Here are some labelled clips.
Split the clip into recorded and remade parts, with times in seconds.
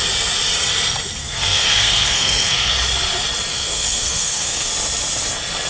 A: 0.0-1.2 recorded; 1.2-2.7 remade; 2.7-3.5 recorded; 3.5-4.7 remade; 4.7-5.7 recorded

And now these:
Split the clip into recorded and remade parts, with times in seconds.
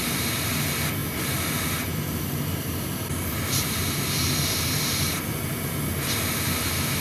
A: 0.0-1.0 recorded; 1.0-5.2 remade; 5.2-7.0 recorded